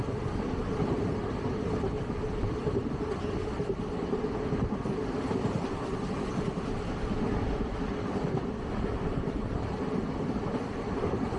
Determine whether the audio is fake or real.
real